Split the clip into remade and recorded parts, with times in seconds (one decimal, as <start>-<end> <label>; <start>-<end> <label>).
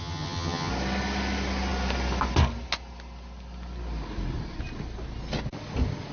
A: 0.0-0.7 remade; 0.7-6.1 recorded